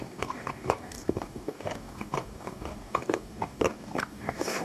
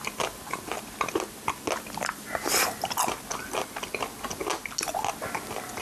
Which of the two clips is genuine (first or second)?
second